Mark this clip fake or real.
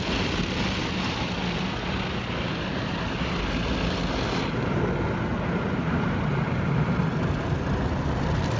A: real